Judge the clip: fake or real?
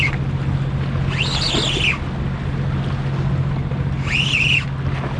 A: real